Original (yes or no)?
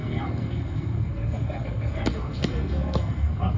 no